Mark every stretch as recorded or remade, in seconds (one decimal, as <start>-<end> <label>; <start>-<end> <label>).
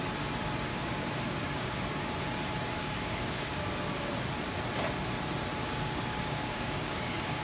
0.0-0.7 recorded; 0.7-1.8 remade; 1.8-2.8 recorded; 2.8-3.7 remade; 3.7-5.6 recorded; 5.6-7.4 remade